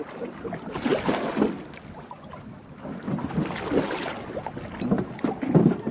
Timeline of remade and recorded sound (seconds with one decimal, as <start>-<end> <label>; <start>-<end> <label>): 0.0-5.9 recorded

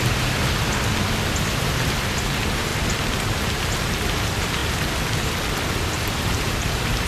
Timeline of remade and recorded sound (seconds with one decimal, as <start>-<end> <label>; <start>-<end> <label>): 0.0-0.4 remade; 0.4-1.3 recorded; 1.3-2.7 remade; 2.7-4.1 recorded; 4.1-4.6 remade; 4.6-5.8 recorded; 5.8-7.1 remade

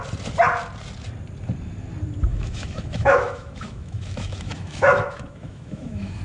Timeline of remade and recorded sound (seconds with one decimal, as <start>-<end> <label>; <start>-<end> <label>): 0.0-2.3 recorded; 2.3-6.2 remade

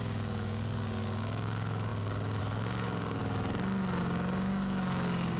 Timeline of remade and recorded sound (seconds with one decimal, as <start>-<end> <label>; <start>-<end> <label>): 0.0-3.2 remade; 3.2-4.0 recorded; 4.0-5.4 remade

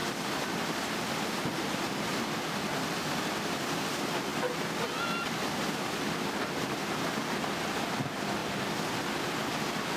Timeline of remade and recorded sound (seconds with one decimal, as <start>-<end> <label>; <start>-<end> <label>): 0.0-10.0 recorded

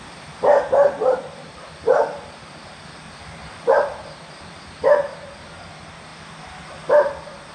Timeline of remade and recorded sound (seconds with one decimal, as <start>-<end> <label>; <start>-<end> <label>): 0.0-3.4 recorded; 3.4-4.6 remade; 4.6-7.5 recorded

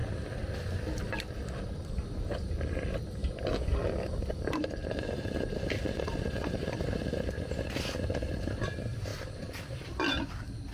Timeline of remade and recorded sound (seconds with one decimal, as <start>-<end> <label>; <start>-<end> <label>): 0.0-10.7 remade

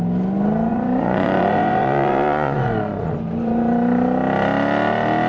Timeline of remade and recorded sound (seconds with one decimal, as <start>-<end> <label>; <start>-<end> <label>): 0.0-0.7 recorded; 0.7-3.1 remade; 3.1-5.3 recorded